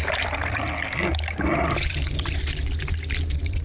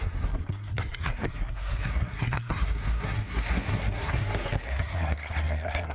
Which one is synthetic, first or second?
second